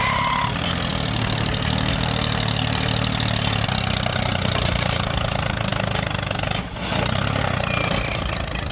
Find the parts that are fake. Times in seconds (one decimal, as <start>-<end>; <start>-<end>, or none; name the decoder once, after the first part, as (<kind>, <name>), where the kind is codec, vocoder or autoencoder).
none

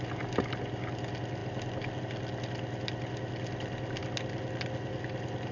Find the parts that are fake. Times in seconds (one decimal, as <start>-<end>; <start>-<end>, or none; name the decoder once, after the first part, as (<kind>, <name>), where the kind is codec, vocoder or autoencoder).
none